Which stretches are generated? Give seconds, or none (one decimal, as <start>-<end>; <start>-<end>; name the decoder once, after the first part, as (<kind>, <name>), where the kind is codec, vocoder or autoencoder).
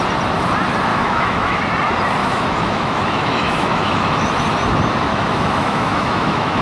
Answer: 0.9-1.6 (autoencoder, DAC-VAE); 2.2-4.4; 5.1-6.6